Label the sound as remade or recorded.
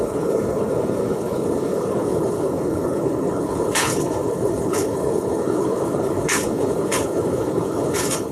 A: remade